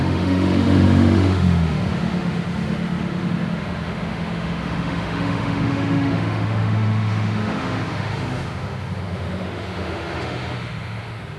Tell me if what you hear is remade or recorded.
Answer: remade